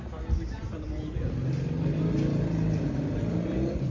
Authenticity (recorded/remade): recorded